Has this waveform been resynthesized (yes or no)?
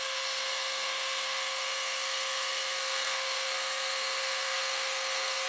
yes